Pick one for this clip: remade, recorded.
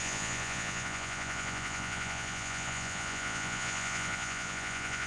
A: remade